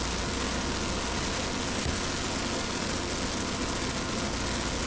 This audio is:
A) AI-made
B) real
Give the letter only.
B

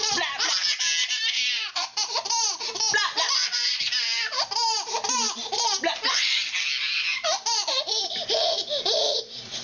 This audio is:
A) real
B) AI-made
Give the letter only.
B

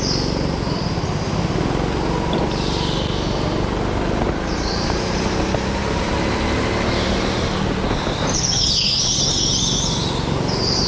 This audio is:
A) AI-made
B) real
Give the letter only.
B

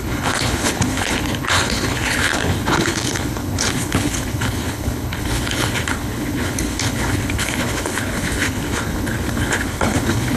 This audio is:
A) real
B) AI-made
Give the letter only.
B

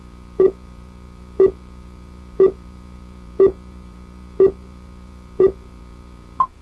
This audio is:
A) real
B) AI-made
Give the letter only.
B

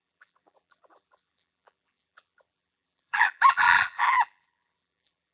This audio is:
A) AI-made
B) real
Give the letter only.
A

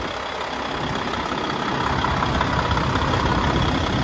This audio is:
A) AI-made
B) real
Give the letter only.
B